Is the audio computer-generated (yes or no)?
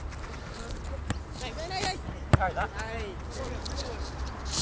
no